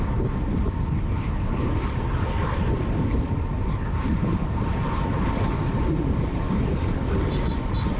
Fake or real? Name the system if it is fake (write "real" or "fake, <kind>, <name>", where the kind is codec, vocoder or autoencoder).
real